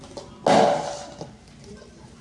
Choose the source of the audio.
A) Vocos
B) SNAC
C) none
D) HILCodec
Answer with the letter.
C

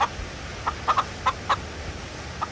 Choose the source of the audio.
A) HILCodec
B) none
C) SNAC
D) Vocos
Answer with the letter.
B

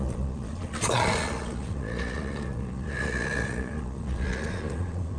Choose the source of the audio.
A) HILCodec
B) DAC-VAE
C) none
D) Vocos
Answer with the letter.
D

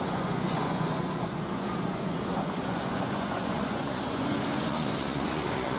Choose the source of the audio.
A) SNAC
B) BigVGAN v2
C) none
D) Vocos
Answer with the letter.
D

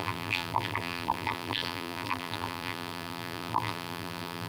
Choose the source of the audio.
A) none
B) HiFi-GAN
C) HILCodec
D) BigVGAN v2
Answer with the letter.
D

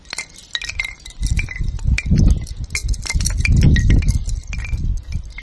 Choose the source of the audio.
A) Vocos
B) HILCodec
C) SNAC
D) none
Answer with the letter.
D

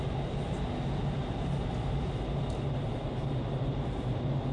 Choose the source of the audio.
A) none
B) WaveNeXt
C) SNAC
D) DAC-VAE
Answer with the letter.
A